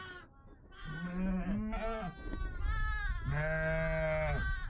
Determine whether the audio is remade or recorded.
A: recorded